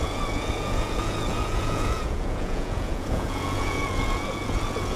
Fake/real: fake